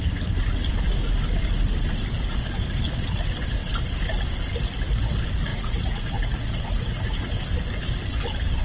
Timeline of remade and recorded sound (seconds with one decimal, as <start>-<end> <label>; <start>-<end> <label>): 0.0-5.5 recorded; 5.5-7.3 remade; 7.3-8.6 recorded